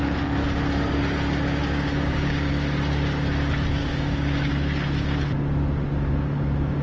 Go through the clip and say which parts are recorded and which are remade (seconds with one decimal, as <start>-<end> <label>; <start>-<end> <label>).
0.0-1.6 recorded; 1.6-2.5 remade; 2.5-3.8 recorded; 3.8-4.5 remade; 4.5-6.8 recorded